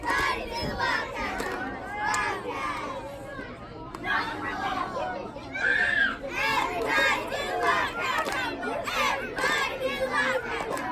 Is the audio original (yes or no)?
yes